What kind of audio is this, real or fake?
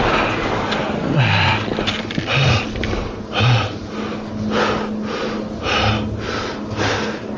real